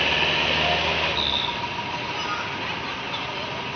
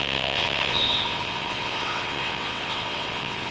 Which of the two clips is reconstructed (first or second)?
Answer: second